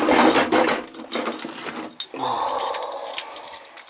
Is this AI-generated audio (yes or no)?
no